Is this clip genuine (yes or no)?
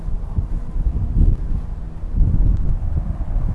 yes